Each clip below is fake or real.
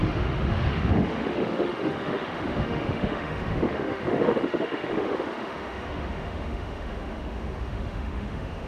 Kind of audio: fake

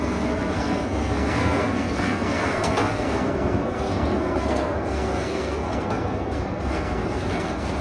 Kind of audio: fake